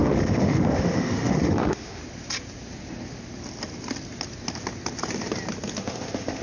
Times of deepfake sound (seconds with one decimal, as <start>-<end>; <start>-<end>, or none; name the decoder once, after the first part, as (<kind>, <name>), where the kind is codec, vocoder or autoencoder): 0.0-2.0 (autoencoder, DAC-VAE); 5.8-6.4